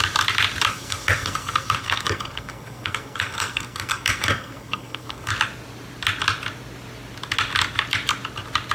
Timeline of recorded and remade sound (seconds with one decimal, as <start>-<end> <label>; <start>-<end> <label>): 0.0-0.7 recorded; 0.7-5.3 remade; 5.3-8.7 recorded